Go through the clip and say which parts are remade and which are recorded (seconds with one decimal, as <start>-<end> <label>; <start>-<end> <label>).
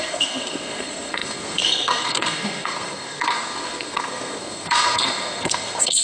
0.0-6.0 remade